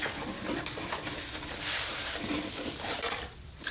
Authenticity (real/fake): real